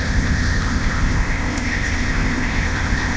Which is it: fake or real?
fake